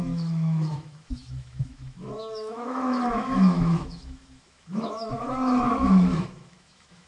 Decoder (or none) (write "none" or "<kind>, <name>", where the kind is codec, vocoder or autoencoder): autoencoder, DAC-VAE